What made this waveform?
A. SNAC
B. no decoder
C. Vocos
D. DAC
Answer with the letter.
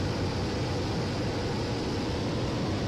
B